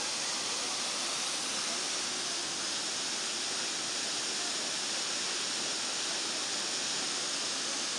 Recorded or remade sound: recorded